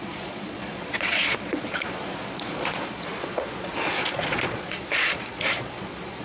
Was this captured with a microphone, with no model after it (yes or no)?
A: no